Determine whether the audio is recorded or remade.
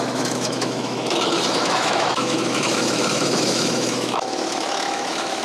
remade